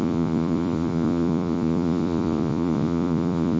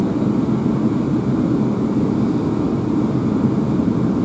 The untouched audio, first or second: second